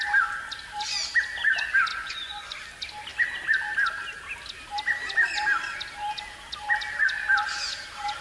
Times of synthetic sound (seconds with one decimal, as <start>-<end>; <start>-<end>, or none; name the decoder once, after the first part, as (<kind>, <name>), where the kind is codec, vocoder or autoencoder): 1.9-2.6 (vocoder, Vocos)